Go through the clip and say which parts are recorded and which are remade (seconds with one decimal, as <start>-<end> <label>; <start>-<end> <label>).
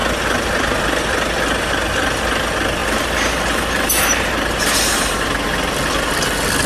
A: 0.0-2.8 recorded; 2.8-5.1 remade; 5.1-6.7 recorded